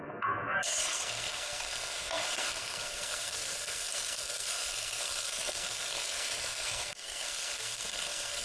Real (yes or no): no